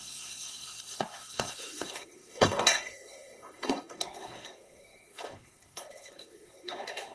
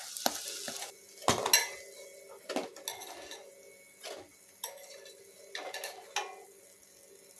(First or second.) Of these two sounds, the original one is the second